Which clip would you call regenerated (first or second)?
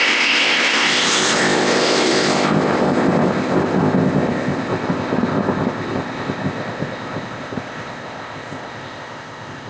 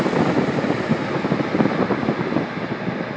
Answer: first